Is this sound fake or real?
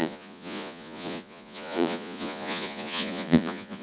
fake